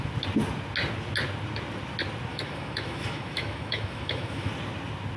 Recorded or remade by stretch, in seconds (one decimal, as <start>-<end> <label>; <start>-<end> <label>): 0.0-2.3 recorded; 2.3-4.5 remade; 4.5-5.2 recorded